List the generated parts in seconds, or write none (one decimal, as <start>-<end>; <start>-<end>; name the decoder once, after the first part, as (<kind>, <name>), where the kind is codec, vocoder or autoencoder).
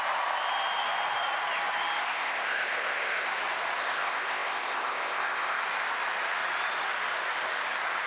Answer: 2.0-3.3 (codec, ZipCodec); 3.8-5.6